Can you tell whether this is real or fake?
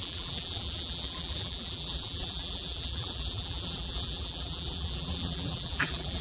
fake